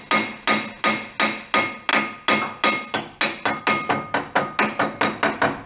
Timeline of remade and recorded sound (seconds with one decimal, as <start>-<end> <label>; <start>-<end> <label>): 0.0-5.7 recorded